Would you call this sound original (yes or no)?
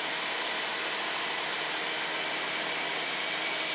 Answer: yes